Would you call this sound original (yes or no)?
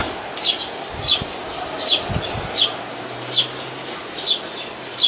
yes